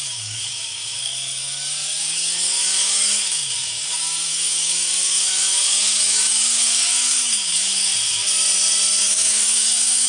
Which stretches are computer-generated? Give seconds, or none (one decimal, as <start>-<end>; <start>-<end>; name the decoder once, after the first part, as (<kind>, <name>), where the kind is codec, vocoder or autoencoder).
0.0-7.9 (codec, DAC); 9.0-10.1